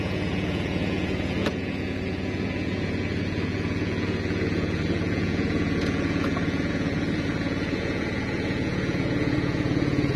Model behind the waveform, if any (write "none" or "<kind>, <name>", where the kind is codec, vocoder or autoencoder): vocoder, Vocos